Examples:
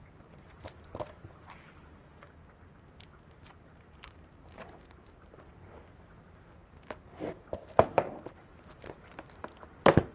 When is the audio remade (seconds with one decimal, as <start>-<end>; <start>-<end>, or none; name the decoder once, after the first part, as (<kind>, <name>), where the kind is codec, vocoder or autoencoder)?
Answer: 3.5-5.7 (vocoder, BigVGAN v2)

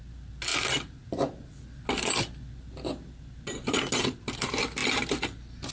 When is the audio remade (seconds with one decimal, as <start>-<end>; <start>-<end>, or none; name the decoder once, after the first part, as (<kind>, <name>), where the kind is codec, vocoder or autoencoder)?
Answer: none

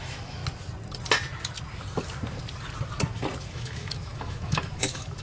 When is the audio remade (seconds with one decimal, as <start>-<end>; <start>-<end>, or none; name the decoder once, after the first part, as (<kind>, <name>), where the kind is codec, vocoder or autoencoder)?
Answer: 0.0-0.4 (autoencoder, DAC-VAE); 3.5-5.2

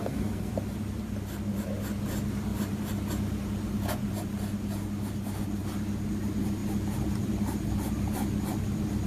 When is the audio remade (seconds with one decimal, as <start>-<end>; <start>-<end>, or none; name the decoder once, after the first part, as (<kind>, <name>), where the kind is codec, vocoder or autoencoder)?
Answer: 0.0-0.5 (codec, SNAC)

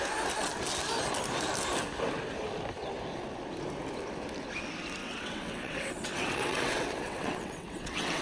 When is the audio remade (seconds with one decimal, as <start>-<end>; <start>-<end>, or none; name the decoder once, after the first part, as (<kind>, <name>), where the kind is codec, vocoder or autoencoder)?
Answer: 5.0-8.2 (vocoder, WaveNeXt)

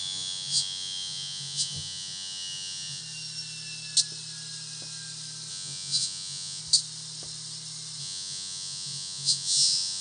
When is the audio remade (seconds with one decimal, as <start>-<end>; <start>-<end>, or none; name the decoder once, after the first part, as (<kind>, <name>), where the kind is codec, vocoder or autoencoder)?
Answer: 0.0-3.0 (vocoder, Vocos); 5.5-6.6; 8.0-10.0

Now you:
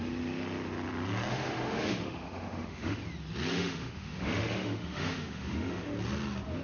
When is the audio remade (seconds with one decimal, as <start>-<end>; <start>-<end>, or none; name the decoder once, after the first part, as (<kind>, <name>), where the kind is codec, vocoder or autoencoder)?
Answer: 1.3-3.0 (autoencoder, DAC-VAE); 3.5-5.8

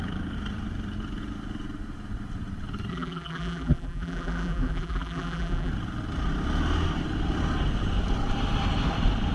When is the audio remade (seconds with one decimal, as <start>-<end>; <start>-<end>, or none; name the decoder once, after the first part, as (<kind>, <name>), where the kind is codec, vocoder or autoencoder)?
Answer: 2.9-5.7 (vocoder, BigVGAN v2)